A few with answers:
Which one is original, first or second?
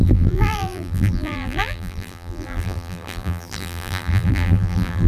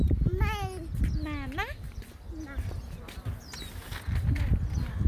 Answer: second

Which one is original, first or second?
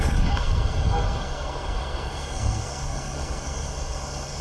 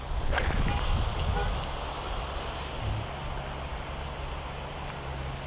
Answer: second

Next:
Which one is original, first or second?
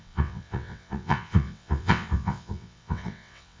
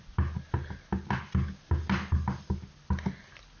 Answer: second